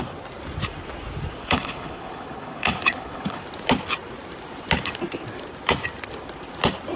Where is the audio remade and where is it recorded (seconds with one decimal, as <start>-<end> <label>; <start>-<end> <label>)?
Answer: 0.0-1.4 recorded; 1.4-3.4 remade; 3.4-7.0 recorded